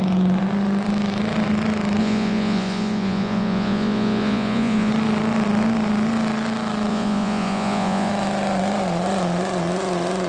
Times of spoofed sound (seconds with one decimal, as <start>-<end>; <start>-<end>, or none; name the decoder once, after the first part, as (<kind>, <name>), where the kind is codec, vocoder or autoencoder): 2.0-4.9 (vocoder, Vocos); 6.9-8.1